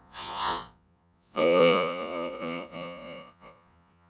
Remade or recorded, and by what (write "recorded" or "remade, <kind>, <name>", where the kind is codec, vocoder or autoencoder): remade, vocoder, Vocos